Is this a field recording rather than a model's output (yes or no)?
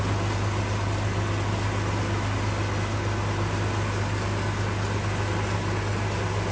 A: yes